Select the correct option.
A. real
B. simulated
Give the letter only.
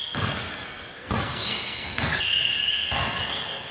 B